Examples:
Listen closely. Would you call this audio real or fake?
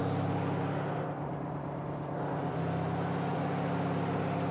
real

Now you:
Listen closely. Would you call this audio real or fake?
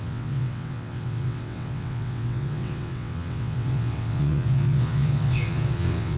fake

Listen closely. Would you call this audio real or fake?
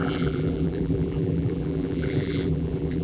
fake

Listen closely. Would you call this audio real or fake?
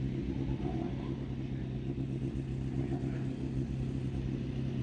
real